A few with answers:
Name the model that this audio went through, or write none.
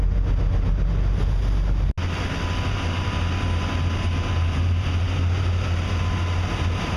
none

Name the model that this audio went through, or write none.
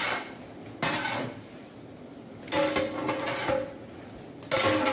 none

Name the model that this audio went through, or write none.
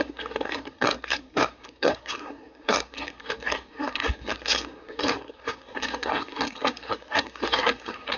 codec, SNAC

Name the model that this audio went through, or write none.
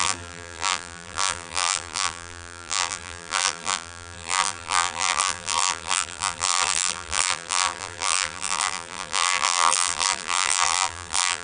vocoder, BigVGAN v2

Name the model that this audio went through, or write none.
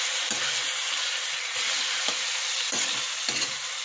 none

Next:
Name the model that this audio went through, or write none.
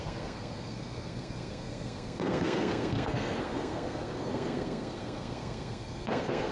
codec, SNAC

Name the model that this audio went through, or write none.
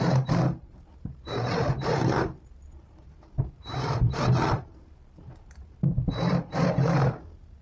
vocoder, BigVGAN v2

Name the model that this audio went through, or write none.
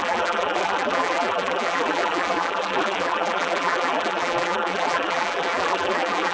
vocoder, BigVGAN v2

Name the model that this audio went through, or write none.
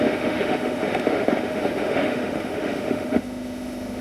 autoencoder, DAC-VAE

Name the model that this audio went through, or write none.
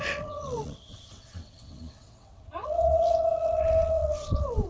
vocoder, WaveNeXt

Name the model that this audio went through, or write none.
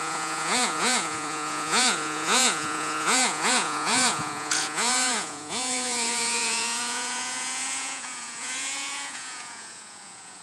vocoder, Vocos